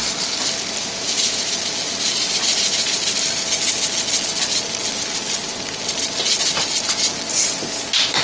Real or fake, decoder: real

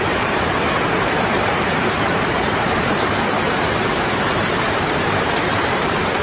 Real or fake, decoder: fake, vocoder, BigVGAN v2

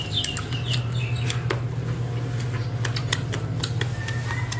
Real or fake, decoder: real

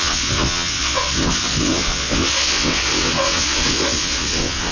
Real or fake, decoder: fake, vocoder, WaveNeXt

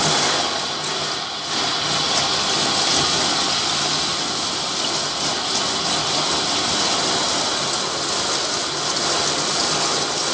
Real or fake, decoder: real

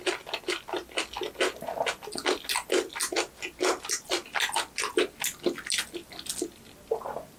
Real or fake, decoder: real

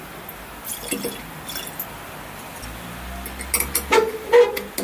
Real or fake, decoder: real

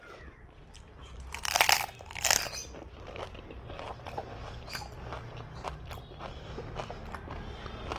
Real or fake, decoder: fake, vocoder, BigVGAN v2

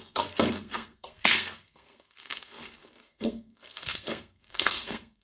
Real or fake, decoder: fake, codec, SNAC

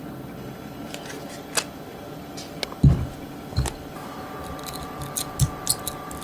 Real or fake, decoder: real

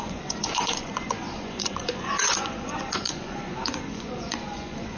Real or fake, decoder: fake, vocoder, Vocos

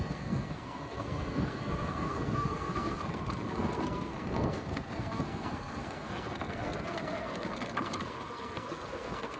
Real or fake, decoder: fake, codec, SNAC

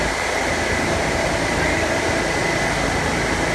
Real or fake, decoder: real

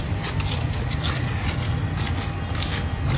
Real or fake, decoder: real